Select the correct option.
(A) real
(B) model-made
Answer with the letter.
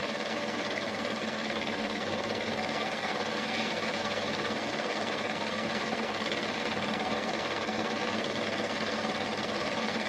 B